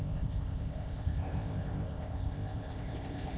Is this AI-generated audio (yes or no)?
yes